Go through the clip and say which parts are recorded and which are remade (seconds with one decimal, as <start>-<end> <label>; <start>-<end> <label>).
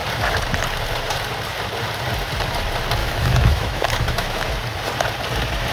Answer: 0.0-3.0 recorded; 3.0-4.5 remade; 4.5-5.7 recorded